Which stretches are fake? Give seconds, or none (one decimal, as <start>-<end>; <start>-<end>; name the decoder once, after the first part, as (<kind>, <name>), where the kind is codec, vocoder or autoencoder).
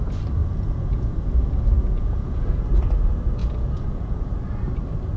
0.4-2.6 (vocoder, Vocos); 3.4-4.3